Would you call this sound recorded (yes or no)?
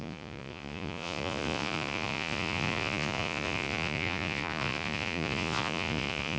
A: no